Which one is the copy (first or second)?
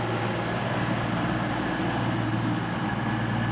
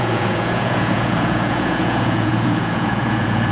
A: second